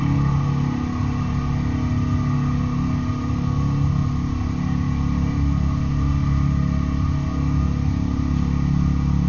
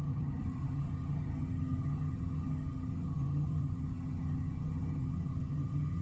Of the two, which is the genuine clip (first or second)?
first